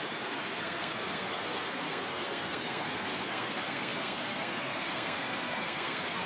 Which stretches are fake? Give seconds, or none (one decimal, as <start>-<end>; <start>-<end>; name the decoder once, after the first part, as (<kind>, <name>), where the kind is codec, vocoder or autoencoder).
0.0-6.3 (codec, SNAC)